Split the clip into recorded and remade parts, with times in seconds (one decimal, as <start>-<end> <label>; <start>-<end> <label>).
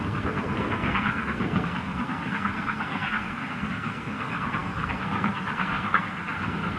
0.0-6.8 remade